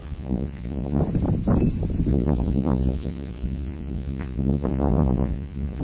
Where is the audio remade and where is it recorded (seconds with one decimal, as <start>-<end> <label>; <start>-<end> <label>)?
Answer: 0.0-1.0 remade; 1.0-2.1 recorded; 2.1-5.8 remade